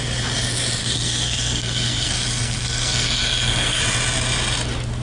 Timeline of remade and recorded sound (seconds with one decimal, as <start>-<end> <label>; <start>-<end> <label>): 0.0-0.8 recorded; 0.8-3.8 remade; 3.8-5.0 recorded